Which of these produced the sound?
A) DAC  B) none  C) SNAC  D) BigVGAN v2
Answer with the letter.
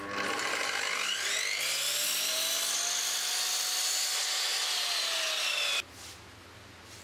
B